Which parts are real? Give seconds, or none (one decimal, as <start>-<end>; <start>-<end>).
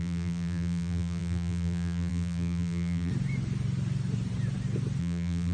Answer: 3.1-5.0